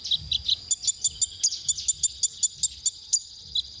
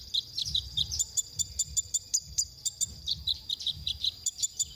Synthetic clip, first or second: second